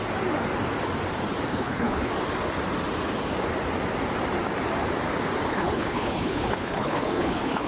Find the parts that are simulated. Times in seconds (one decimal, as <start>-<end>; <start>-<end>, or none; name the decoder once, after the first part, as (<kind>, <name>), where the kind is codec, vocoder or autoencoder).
1.5-2.1 (codec, HILCodec); 5.5-7.7

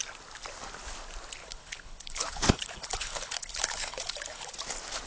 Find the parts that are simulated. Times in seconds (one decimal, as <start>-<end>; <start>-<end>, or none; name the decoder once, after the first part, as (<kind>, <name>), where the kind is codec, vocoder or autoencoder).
1.4-4.5 (codec, HILCodec)

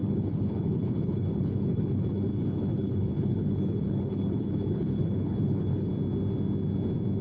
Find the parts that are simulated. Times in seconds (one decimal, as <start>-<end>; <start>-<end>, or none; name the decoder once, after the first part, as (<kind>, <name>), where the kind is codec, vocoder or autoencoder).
0.0-5.9 (codec, HILCodec)